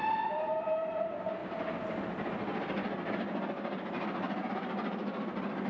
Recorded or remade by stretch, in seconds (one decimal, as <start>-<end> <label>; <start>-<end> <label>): 0.0-1.4 remade; 1.4-4.5 recorded; 4.5-5.7 remade